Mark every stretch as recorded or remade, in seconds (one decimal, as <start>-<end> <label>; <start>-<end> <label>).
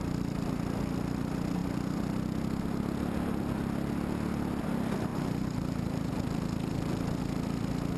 0.0-5.1 recorded; 5.1-6.1 remade; 6.1-8.0 recorded